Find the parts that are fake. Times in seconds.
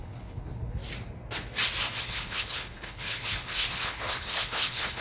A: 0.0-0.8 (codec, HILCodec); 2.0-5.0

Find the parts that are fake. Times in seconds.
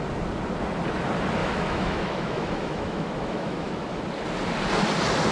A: 1.4-4.0 (autoencoder, DAC-VAE)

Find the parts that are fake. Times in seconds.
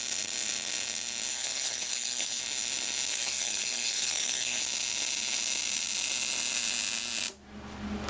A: 1.3-2.4 (codec, SNAC); 3.1-4.6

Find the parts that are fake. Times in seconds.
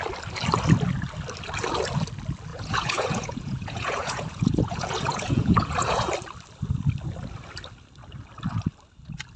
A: 2.5-6.1 (vocoder, Vocos)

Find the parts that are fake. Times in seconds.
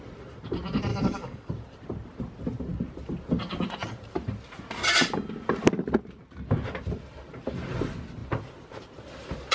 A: 0.9-1.5 (codec, DAC)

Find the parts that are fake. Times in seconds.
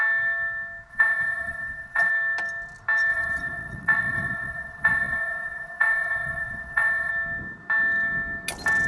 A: 0.9-2.1 (vocoder, WaveNeXt); 3.1-7.1